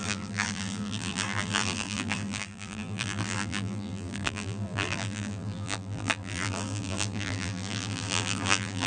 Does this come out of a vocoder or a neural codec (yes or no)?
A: yes